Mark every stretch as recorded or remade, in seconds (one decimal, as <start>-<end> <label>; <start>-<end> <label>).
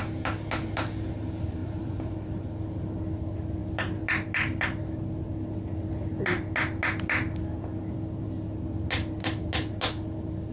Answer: 0.0-1.6 recorded; 1.6-2.4 remade; 2.4-10.5 recorded